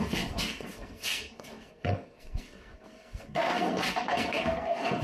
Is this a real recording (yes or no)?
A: no